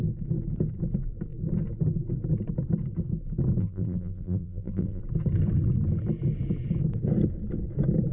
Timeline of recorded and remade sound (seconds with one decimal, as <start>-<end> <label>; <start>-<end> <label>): 0.0-3.6 recorded; 3.6-5.0 remade; 5.0-8.1 recorded